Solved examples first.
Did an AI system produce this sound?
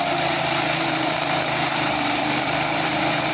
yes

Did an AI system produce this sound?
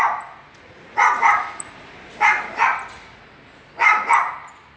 no